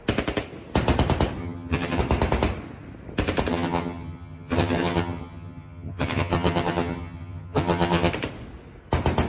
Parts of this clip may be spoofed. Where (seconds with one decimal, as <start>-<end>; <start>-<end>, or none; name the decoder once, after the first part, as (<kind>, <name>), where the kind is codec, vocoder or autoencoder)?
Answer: 1.4-2.0 (vocoder, HiFi-GAN); 3.5-8.1

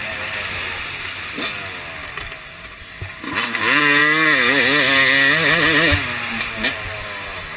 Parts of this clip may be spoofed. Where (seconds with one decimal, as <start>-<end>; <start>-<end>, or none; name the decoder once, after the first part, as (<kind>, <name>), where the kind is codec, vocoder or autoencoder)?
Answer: none